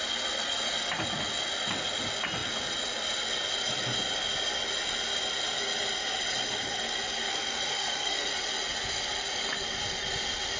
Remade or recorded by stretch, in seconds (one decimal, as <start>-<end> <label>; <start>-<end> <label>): 0.0-7.3 recorded; 7.3-8.3 remade; 8.3-10.6 recorded

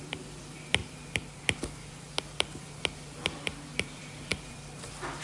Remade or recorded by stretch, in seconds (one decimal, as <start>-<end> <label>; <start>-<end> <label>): 0.0-5.2 remade